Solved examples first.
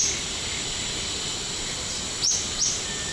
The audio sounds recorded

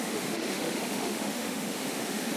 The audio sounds remade